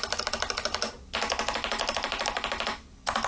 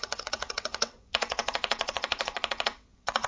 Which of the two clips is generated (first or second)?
second